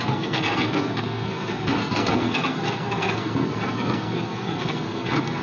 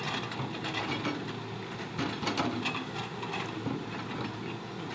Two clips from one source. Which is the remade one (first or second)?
first